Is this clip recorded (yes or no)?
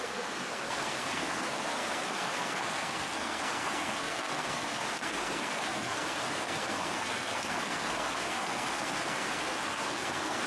no